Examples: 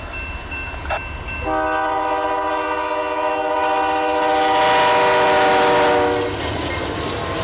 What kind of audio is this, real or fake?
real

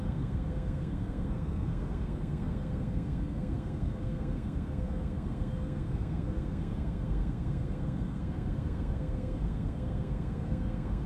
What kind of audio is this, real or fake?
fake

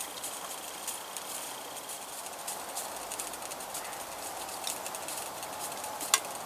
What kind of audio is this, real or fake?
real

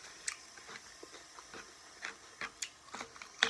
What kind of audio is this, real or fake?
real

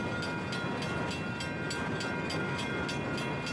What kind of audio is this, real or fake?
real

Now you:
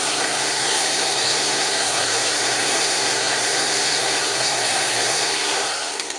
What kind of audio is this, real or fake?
fake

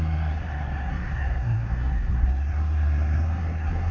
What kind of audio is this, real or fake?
fake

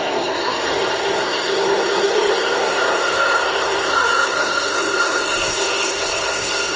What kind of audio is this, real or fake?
fake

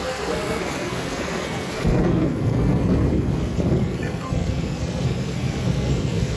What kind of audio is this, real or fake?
fake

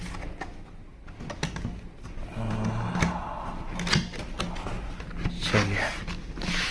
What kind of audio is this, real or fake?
real